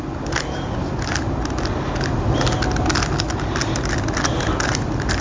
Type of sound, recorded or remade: recorded